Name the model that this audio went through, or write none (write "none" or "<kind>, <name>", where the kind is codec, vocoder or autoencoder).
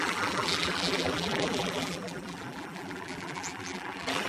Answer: vocoder, BigVGAN v2